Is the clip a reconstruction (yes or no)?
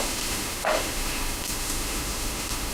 yes